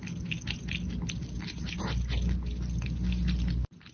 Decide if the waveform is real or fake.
real